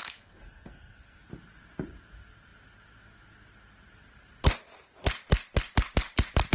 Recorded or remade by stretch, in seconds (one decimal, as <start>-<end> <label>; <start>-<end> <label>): 0.0-1.3 remade; 1.3-6.5 recorded